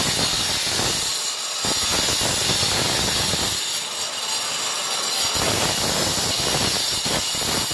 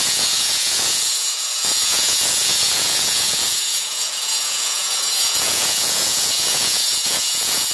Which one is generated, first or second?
second